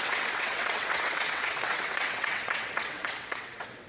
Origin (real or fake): fake